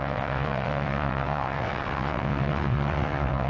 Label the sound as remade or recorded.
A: remade